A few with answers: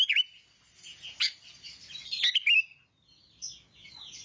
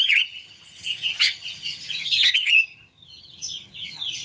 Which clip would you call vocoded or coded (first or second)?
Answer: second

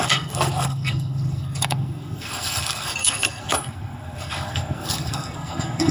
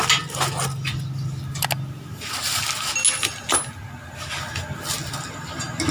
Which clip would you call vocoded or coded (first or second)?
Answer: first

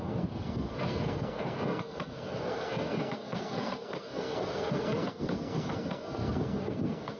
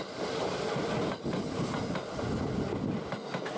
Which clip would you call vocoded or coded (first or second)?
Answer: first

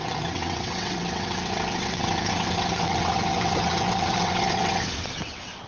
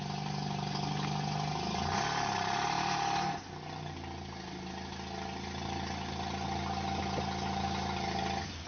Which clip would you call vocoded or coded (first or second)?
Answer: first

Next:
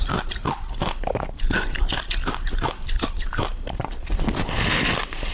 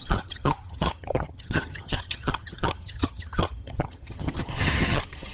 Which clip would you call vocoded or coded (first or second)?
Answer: second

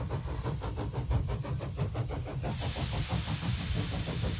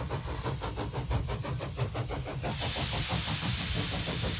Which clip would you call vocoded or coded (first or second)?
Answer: first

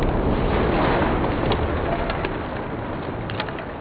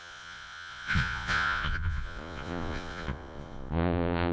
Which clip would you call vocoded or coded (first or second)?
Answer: second